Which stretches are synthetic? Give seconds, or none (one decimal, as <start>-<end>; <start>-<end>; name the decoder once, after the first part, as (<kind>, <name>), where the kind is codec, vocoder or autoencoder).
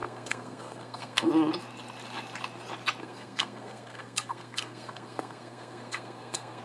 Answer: 0.0-1.3 (codec, SNAC); 3.0-6.6